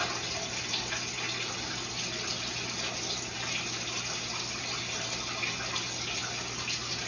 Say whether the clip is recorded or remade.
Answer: recorded